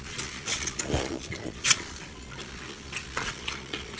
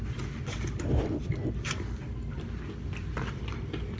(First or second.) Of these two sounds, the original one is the second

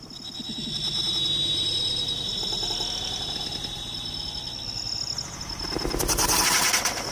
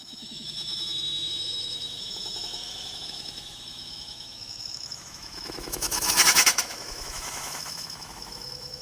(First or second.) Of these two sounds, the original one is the first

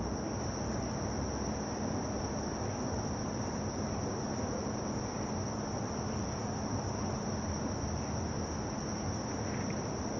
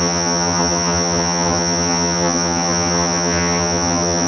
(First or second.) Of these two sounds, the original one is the first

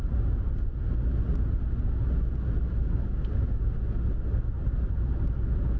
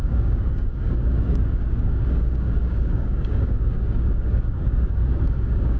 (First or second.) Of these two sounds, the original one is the first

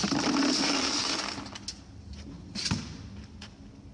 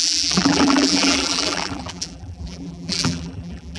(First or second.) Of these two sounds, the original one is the first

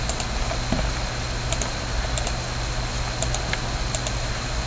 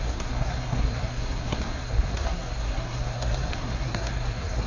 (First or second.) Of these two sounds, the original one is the first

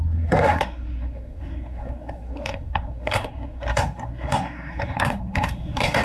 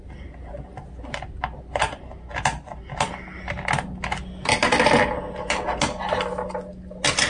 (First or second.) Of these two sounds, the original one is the second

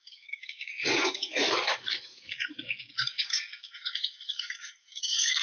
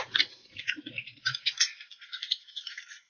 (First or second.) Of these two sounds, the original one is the second